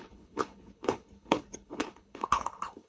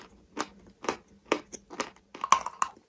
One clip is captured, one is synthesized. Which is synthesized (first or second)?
first